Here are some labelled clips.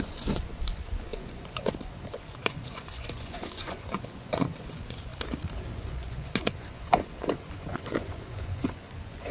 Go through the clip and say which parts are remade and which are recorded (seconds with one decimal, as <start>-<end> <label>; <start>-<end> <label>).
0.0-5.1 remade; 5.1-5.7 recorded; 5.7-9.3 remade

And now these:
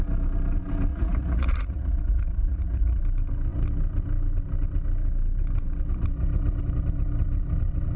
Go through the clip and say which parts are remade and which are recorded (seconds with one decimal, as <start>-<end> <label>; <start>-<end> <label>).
0.0-0.9 recorded; 0.9-3.0 remade; 3.0-8.0 recorded

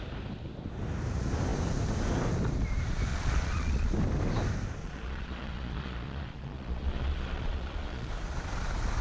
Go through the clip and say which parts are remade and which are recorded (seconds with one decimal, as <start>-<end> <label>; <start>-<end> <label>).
0.0-3.1 recorded; 3.1-3.9 remade; 3.9-4.8 recorded; 4.8-8.1 remade; 8.1-9.0 recorded